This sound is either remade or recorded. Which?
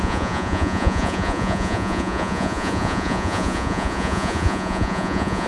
remade